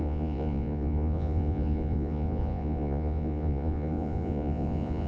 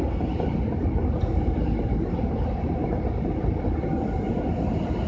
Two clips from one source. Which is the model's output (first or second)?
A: first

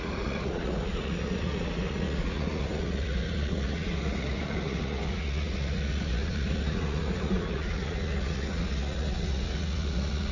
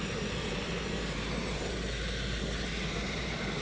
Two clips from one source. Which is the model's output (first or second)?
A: first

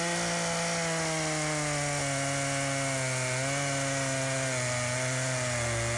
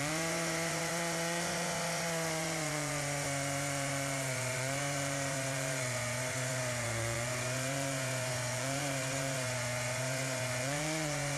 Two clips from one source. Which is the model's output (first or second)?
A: second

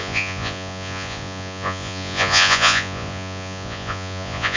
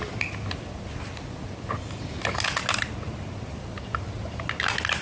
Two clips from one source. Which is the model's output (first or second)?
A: first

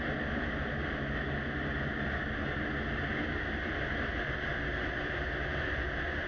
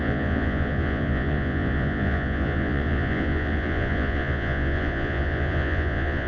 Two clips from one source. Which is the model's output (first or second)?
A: second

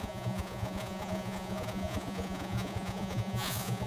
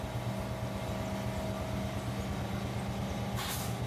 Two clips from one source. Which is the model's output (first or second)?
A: first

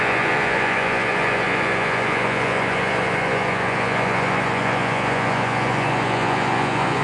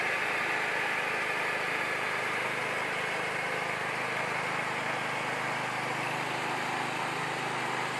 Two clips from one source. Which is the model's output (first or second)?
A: first